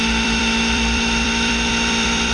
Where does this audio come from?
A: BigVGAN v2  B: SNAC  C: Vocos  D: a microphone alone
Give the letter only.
A